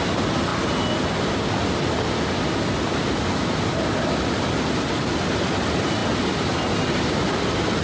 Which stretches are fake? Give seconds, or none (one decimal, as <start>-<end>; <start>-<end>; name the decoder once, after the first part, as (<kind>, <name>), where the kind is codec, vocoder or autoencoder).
none